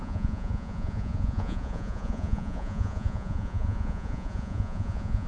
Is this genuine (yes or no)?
no